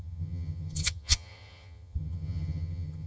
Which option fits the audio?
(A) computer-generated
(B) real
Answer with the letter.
A